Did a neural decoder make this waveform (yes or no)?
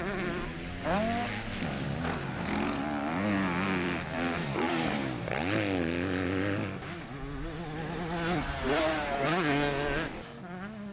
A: no